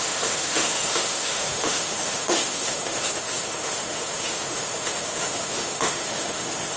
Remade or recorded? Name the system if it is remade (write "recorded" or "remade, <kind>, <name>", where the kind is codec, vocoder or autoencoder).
remade, autoencoder, DAC-VAE